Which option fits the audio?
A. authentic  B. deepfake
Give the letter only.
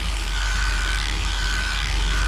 B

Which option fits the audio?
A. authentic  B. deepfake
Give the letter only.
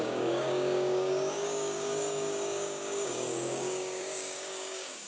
B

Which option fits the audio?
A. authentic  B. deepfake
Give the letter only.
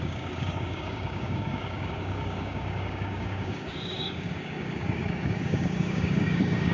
B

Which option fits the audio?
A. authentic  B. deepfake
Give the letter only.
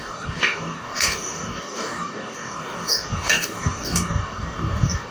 B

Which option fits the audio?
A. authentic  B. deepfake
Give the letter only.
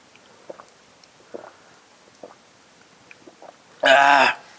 A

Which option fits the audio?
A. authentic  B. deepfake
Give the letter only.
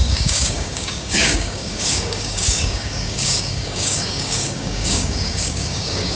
B